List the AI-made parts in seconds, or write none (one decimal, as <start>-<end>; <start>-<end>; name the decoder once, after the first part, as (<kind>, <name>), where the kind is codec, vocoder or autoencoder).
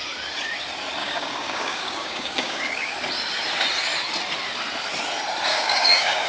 1.0-2.9 (codec, DAC); 5.5-6.3